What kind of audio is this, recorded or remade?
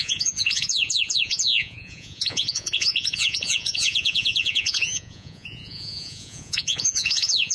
remade